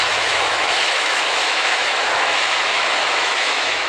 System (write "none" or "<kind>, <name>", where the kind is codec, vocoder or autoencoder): autoencoder, DAC-VAE